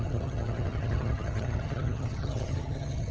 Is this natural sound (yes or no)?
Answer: no